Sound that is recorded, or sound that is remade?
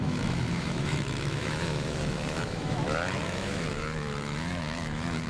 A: remade